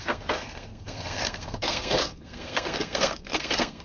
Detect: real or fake fake